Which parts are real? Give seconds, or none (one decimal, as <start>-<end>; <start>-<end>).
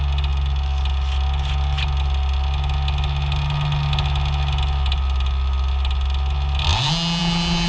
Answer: 0.0-7.7